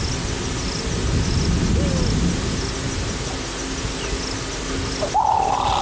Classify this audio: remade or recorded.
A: recorded